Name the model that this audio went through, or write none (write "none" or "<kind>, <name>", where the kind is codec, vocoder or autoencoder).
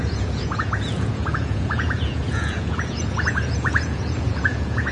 vocoder, Vocos